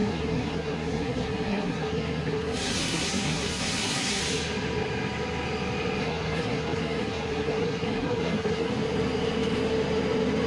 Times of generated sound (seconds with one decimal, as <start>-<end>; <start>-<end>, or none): 0.0-4.2; 6.0-8.7